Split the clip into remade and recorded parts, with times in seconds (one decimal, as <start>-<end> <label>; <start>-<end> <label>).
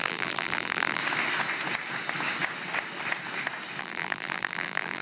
0.0-1.0 remade; 1.0-3.8 recorded; 3.8-5.0 remade